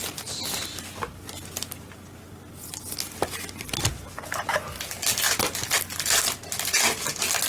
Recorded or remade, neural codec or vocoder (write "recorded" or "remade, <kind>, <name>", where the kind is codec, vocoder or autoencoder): recorded